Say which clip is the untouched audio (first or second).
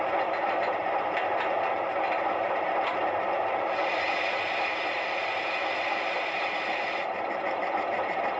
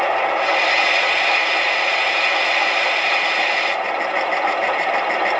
second